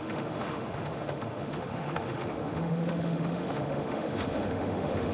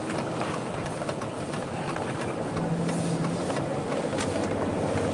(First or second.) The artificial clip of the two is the first